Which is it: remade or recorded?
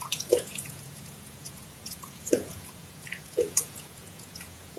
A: remade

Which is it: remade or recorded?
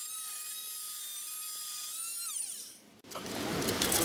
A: recorded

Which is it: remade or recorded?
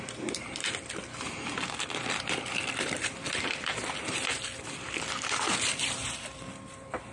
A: remade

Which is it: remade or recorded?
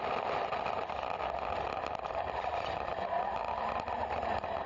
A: recorded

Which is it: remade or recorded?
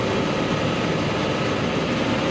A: recorded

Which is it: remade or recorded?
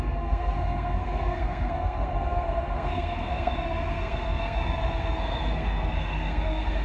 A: remade